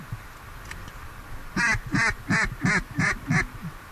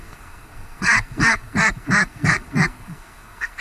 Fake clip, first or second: second